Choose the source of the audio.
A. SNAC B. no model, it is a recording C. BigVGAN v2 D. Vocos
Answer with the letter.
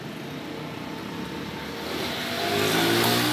B